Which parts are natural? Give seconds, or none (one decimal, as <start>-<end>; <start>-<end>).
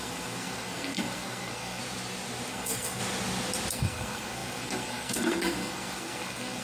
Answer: 1.8-2.5; 3.0-3.7